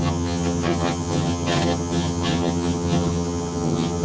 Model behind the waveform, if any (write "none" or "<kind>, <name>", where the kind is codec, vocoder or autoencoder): vocoder, HiFi-GAN